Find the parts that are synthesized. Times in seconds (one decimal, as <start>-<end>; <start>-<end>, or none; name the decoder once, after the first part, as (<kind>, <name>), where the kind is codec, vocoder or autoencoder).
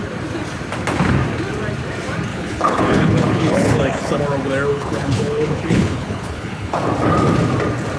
2.3-4.2 (codec, HILCodec); 4.7-6.8